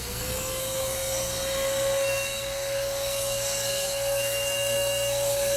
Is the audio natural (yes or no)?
no